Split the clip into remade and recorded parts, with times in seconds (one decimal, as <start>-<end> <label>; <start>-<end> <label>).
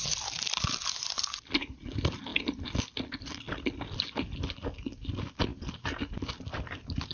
0.0-7.1 recorded